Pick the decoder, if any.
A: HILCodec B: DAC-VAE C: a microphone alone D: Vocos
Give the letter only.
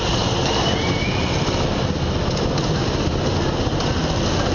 C